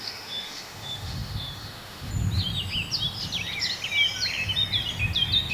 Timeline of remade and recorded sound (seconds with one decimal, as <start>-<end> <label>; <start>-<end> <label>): 0.0-2.1 remade; 2.1-5.5 recorded